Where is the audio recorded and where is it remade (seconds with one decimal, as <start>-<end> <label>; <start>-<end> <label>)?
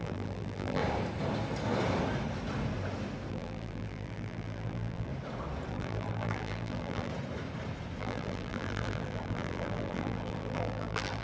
0.0-0.8 remade; 0.8-3.3 recorded; 3.3-5.1 remade; 5.1-5.7 recorded; 5.7-7.1 remade; 7.1-8.0 recorded; 8.0-11.2 remade